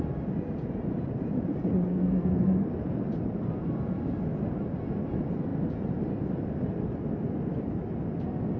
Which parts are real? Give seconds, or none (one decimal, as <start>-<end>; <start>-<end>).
0.0-1.9; 2.7-8.6